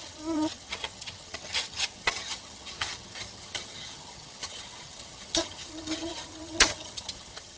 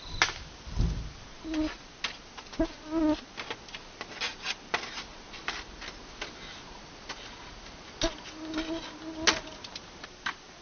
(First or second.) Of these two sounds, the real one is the second